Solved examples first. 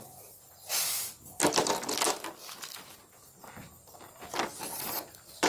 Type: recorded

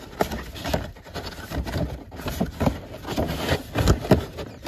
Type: recorded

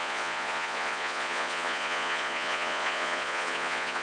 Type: remade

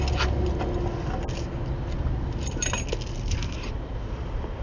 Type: recorded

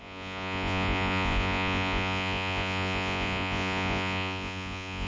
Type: remade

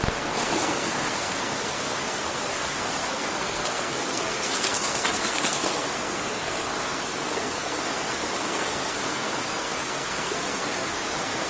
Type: remade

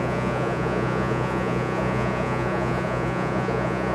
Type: remade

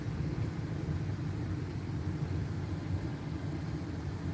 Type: recorded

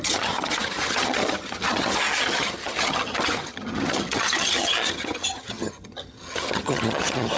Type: remade